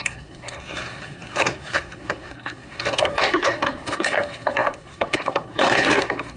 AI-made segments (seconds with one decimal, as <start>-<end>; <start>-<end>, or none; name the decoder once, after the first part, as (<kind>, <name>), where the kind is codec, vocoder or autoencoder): 0.0-6.4 (codec, SNAC)